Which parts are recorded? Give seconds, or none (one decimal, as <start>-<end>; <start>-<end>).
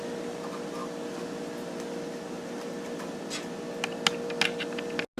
0.0-5.2